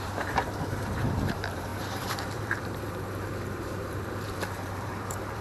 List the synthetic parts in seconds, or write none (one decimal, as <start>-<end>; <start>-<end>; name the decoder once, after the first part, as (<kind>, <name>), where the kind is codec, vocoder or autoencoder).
0.0-5.4 (vocoder, BigVGAN v2)